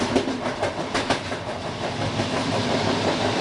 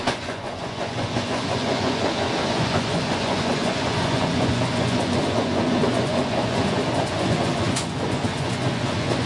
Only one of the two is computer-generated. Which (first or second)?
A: second